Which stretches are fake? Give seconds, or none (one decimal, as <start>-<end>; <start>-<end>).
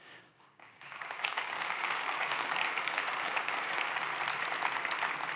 0.0-4.1